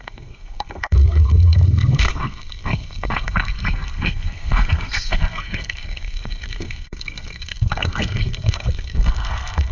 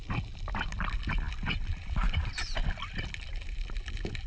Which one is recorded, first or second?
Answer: second